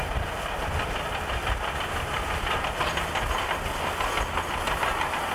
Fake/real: real